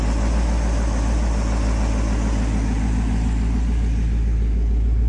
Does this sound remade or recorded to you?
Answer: recorded